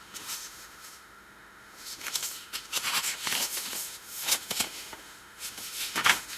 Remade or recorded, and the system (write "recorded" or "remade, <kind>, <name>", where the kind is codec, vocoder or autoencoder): remade, autoencoder, DAC-VAE